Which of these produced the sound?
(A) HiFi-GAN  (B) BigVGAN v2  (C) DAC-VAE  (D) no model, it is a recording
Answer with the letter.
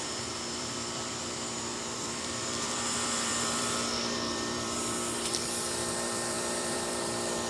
B